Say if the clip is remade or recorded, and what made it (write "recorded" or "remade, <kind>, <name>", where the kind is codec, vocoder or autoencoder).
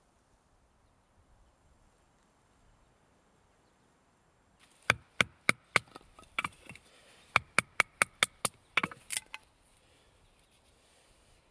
recorded